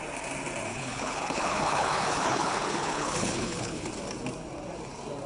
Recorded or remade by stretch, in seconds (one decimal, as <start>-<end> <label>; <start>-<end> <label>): 0.0-0.7 recorded; 0.7-3.9 remade; 3.9-5.3 recorded

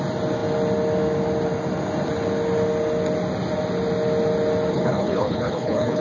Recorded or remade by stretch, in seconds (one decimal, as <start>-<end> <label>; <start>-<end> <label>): 0.0-4.7 recorded; 4.7-6.0 remade

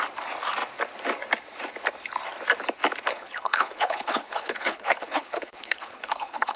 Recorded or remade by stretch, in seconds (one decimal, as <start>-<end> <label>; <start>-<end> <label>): 0.0-3.1 recorded; 3.1-6.6 remade

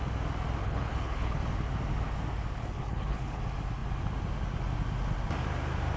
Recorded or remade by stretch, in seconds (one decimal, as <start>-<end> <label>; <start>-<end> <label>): 0.0-0.6 recorded; 0.6-1.4 remade; 1.4-2.6 recorded; 2.6-3.4 remade; 3.4-6.0 recorded

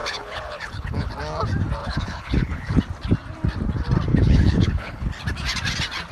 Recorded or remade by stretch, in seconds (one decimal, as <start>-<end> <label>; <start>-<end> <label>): 0.0-1.1 remade; 1.1-1.8 recorded; 1.8-2.8 remade; 2.8-4.1 recorded; 4.1-5.1 remade; 5.1-6.1 recorded

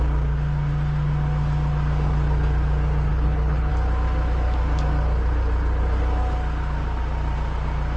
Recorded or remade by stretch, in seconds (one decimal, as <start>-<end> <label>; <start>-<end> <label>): 0.0-3.1 recorded; 3.1-3.7 remade; 3.7-8.0 recorded

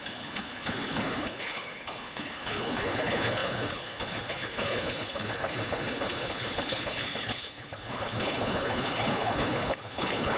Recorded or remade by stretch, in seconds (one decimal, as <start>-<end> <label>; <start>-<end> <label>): 0.0-10.4 remade